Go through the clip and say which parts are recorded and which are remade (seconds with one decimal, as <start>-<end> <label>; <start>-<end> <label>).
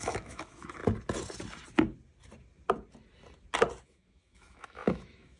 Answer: 0.0-0.8 remade; 0.8-3.8 recorded; 3.8-5.4 remade